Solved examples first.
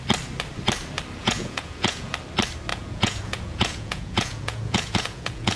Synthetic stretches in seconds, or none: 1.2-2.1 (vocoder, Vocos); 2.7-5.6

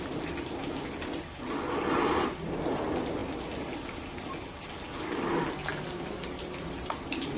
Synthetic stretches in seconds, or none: none